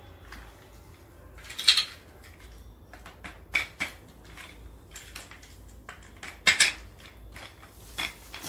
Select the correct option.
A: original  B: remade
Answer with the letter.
A